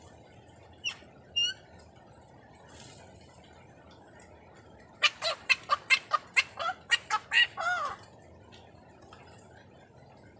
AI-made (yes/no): no